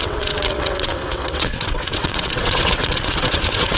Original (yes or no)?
no